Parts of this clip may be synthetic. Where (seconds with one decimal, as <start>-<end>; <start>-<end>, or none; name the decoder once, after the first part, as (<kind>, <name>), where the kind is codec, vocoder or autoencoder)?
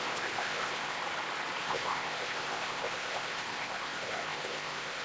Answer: 0.0-1.0 (codec, ZipCodec); 1.6-5.0